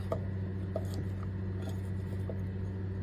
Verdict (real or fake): real